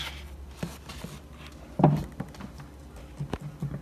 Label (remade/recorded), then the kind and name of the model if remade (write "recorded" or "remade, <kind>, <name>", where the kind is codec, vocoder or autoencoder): recorded